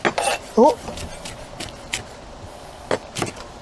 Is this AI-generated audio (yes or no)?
no